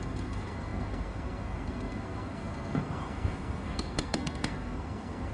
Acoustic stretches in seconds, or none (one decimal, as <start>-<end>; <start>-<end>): none